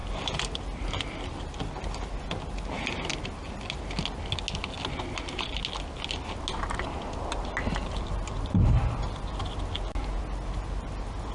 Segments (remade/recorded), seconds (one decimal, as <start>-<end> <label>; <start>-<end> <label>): 0.0-1.4 remade; 1.4-11.3 recorded